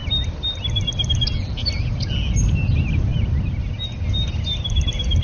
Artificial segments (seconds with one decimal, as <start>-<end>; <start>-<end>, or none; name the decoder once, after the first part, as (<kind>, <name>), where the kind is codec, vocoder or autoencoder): none